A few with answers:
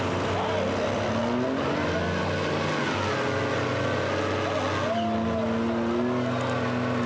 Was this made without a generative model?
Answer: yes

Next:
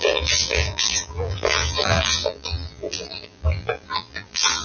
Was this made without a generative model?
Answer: no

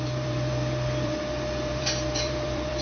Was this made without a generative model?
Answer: no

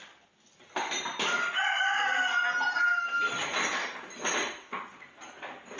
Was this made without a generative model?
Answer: yes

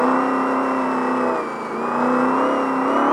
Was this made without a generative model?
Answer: yes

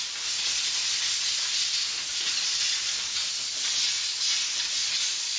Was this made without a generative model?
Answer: yes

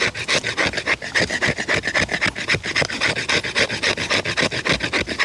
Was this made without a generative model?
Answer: yes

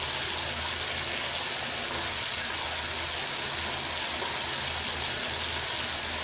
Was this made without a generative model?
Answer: yes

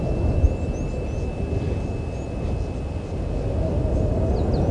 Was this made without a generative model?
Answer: yes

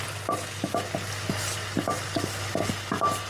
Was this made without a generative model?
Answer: yes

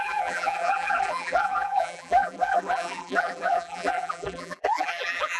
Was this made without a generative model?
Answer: no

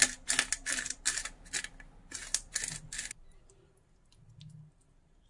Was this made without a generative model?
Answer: yes